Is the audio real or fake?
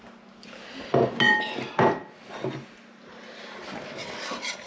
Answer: real